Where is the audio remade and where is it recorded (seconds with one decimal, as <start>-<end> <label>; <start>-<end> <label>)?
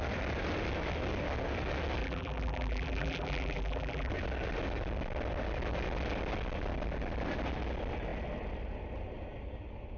0.0-2.0 recorded; 2.0-4.1 remade; 4.1-10.0 recorded